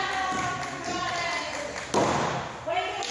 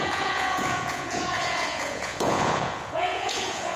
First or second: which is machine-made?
second